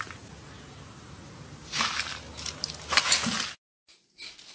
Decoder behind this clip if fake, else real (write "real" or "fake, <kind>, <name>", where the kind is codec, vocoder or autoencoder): real